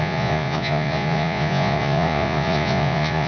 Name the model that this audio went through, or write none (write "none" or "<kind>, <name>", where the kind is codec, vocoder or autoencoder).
vocoder, Vocos